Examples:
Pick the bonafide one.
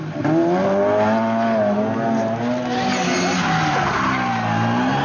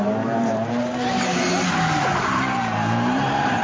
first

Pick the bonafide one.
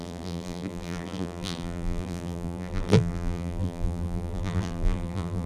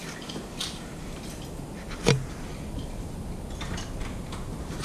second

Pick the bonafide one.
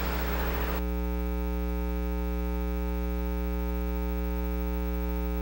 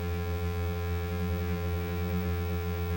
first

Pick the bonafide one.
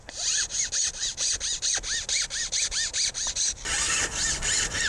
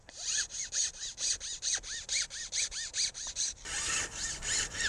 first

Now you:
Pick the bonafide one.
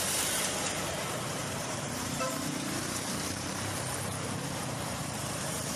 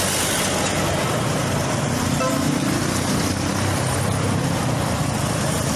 second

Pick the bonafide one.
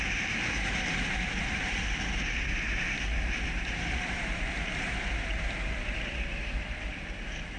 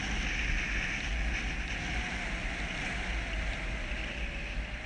second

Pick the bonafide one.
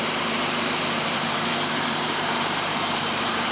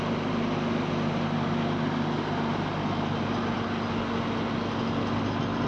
second